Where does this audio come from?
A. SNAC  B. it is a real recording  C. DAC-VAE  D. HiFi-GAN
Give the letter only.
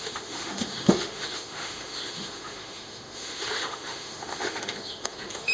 C